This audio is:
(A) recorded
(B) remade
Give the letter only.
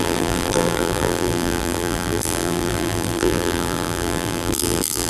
B